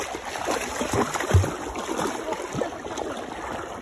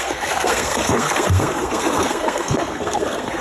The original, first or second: first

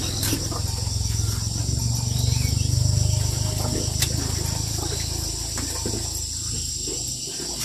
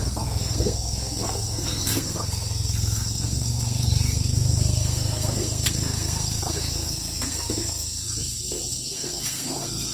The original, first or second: first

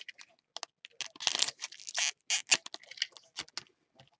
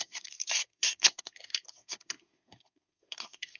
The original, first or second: first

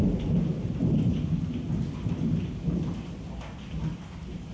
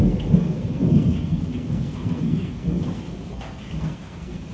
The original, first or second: first